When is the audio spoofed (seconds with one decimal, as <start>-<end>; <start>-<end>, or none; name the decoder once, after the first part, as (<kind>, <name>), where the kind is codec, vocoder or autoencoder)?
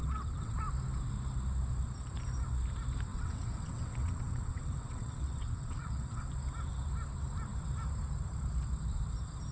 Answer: 0.0-0.6 (vocoder, WaveNeXt); 3.1-6.2